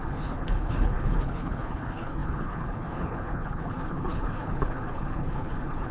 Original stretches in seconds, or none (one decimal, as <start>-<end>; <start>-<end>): none